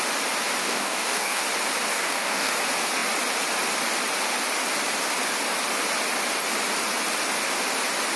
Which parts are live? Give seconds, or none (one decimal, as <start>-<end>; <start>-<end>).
0.0-0.6; 1.4-1.9; 2.5-8.2